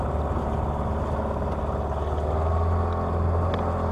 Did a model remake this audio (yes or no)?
no